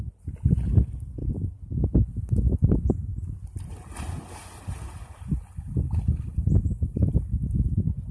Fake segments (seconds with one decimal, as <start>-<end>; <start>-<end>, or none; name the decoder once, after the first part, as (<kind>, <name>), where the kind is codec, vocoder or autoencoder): none